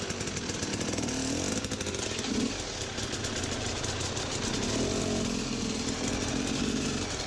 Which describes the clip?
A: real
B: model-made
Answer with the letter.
A